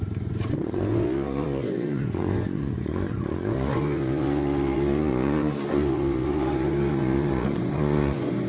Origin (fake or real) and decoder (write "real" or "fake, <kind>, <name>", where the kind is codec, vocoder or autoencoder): fake, vocoder, Vocos